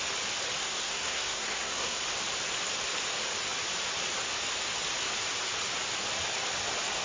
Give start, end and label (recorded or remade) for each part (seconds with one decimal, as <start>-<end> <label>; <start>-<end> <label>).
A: 0.0-0.6 recorded; 0.6-2.0 remade; 2.0-7.0 recorded